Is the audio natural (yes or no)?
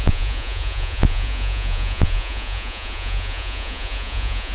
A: no